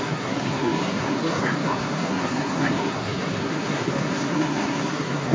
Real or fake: fake